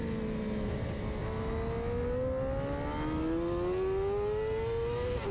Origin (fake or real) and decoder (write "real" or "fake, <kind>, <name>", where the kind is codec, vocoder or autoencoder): real